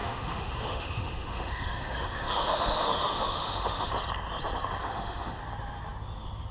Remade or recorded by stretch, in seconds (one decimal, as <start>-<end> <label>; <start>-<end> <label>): 0.0-3.9 remade; 3.9-4.8 recorded; 4.8-5.4 remade; 5.4-6.5 recorded